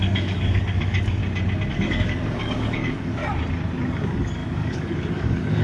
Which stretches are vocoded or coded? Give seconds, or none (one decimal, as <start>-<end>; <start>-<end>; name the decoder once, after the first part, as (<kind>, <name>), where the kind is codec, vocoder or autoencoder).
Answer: 0.0-1.2 (codec, DAC); 1.7-3.2; 3.9-5.6